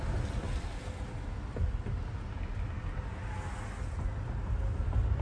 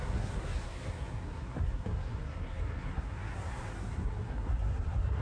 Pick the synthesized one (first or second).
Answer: second